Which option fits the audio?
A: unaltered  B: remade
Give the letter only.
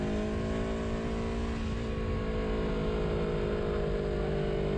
A